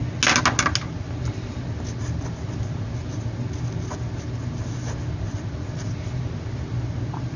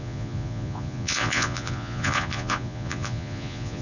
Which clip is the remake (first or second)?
second